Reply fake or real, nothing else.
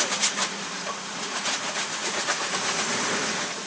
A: fake